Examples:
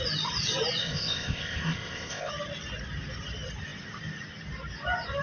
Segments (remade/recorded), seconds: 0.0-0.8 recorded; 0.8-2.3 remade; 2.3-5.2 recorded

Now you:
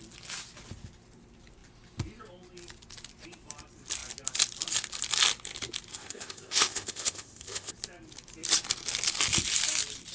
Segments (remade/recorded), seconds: 0.0-5.9 recorded; 5.9-7.7 remade; 7.7-10.1 recorded

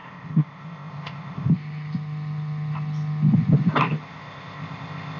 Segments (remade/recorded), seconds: 0.0-1.5 remade; 1.5-4.0 recorded; 4.0-5.2 remade

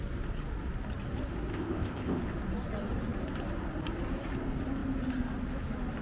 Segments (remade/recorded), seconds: 0.0-1.5 recorded; 1.5-2.2 remade; 2.2-6.0 recorded